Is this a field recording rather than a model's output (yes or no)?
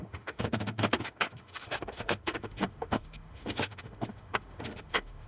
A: no